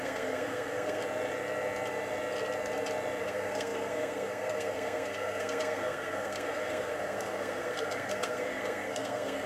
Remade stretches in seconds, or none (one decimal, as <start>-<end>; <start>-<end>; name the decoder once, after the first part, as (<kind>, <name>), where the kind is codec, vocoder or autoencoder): 0.0-1.0 (codec, SNAC); 3.2-9.5